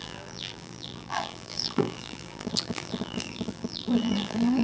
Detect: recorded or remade remade